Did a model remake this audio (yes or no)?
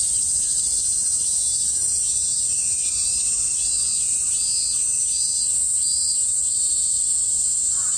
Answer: no